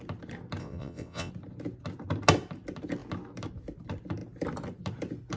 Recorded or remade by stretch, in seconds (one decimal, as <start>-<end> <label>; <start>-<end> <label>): 0.0-0.6 recorded; 0.6-1.3 remade; 1.3-5.4 recorded